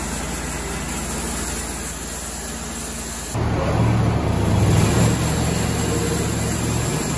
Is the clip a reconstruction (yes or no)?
no